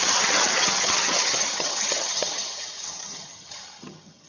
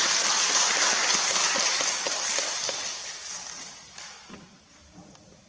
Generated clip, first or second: first